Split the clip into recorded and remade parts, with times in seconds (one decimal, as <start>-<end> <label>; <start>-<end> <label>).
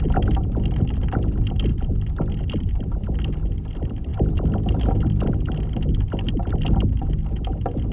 0.0-7.9 recorded